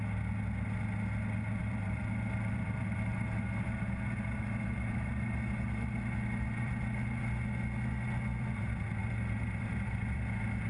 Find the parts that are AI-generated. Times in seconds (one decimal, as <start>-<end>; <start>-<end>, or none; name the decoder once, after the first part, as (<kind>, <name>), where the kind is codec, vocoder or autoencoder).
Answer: 1.6-6.7 (vocoder, BigVGAN v2); 9.0-10.2